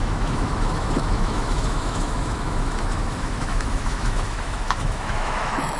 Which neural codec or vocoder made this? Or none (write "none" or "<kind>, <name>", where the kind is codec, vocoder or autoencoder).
autoencoder, DAC-VAE